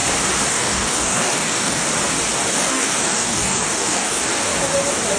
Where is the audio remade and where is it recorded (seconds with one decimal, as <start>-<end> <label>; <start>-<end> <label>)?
0.0-0.5 recorded; 0.5-1.8 remade; 1.8-2.5 recorded; 2.5-4.5 remade; 4.5-5.2 recorded